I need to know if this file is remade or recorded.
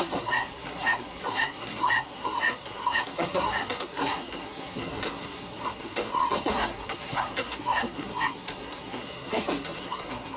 remade